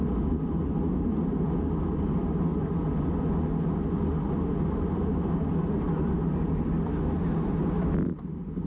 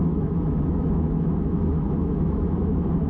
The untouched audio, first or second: first